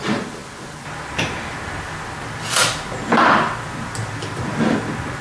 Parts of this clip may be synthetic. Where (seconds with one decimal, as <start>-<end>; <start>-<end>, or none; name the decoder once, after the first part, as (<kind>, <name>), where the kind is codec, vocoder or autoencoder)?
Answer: none

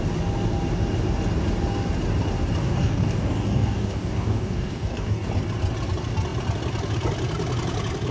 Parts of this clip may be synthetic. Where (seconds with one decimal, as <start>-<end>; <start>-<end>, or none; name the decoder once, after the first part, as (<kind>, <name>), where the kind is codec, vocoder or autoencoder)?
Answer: 2.6-5.3 (codec, DAC)